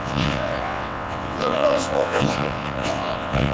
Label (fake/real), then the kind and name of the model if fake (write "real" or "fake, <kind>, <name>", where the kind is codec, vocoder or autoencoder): fake, vocoder, WaveNeXt